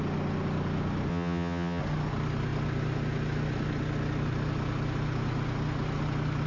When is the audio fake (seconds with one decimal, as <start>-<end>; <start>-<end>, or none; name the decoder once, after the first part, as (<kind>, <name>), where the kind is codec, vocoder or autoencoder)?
1.1-1.8 (vocoder, HiFi-GAN)